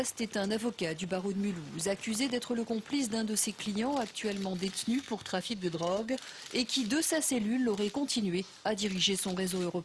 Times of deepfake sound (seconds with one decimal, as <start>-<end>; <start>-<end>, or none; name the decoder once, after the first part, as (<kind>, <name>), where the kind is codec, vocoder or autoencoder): 4.7-6.2 (codec, SNAC)

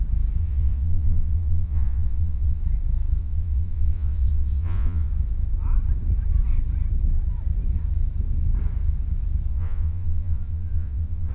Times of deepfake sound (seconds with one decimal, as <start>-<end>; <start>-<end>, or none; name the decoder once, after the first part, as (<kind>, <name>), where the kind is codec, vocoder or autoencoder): 0.4-2.6 (vocoder, Vocos); 3.2-5.1; 9.5-11.3

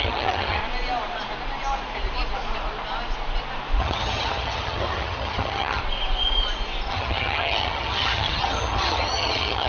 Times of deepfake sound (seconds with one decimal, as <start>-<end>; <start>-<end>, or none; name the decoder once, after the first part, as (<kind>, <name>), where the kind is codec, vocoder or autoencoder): 0.0-0.6 (vocoder, HiFi-GAN); 3.8-5.8; 6.9-9.7

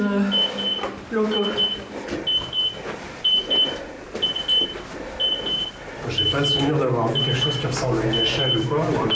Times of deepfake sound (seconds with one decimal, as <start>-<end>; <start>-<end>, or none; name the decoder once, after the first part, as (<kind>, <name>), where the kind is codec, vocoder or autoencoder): none

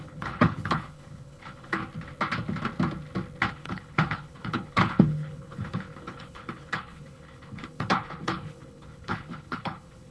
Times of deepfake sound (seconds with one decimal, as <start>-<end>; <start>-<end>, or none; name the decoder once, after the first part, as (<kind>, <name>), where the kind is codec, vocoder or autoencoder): 0.0-1.8 (codec, HILCodec); 3.5-10.1

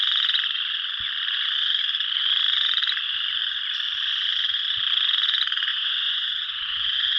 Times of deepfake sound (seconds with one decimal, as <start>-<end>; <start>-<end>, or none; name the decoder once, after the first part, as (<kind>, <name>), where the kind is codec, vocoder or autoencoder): 5.7-7.2 (vocoder, Vocos)

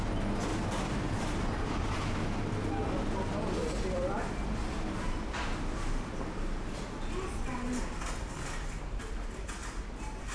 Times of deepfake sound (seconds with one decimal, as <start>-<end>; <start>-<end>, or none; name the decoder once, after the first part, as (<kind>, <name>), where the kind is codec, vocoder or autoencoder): 0.5-2.0 (vocoder, BigVGAN v2)

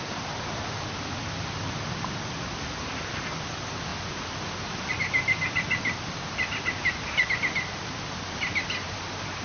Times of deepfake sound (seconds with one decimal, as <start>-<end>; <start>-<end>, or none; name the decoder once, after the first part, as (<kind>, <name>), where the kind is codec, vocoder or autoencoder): none